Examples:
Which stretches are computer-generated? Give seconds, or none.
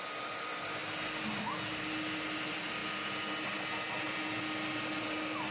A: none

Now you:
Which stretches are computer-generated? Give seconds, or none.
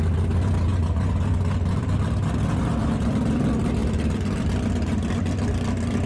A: 1.8-2.6; 3.8-5.2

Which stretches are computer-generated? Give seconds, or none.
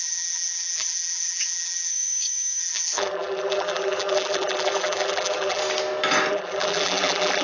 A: 0.0-1.9; 2.6-5.6; 6.3-7.4